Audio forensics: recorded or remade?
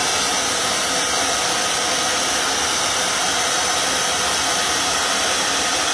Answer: recorded